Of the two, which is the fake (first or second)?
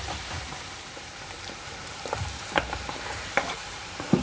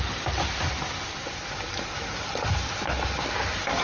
first